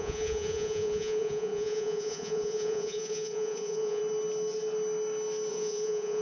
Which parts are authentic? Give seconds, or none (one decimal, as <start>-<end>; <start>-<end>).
4.0-5.5